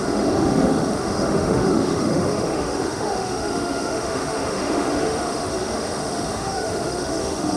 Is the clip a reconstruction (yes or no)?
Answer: yes